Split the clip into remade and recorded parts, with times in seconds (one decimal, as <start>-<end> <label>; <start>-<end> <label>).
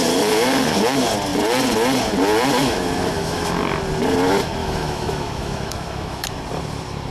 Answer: 0.0-2.6 recorded; 2.6-3.6 remade; 3.6-4.6 recorded; 4.6-6.4 remade; 6.4-7.1 recorded